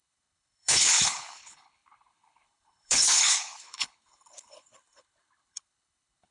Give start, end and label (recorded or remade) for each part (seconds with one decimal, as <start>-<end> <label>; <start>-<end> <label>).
0.0-6.3 remade